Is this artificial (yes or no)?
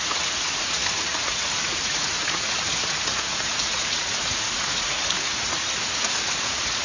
yes